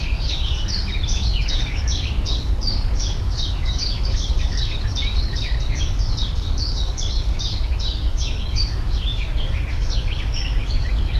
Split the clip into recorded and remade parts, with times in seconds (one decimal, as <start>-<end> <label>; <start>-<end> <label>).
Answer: 0.0-11.2 remade

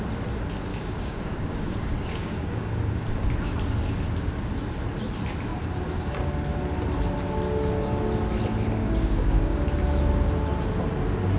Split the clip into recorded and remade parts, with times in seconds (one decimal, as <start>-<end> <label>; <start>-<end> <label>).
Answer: 0.0-0.7 recorded; 0.7-3.0 remade; 3.0-8.8 recorded; 8.8-9.6 remade; 9.6-11.4 recorded